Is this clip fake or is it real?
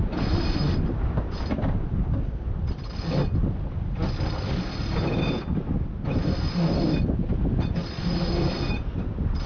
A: real